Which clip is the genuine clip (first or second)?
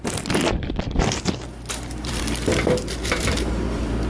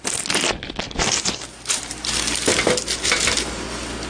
second